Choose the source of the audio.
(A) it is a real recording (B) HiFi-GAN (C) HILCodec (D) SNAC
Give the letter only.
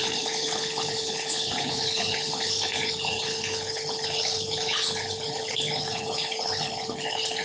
C